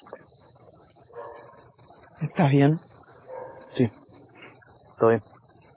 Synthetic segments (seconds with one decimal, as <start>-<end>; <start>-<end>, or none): 0.0-1.3; 2.6-4.5

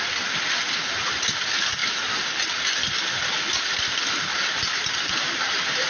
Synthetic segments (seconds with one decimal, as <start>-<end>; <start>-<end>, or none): none

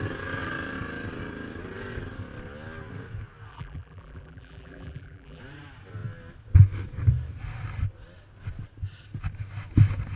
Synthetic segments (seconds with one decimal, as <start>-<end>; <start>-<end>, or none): 3.5-5.4

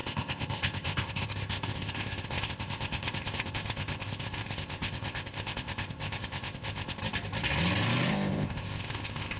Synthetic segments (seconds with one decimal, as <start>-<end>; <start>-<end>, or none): 0.0-7.0; 8.1-9.4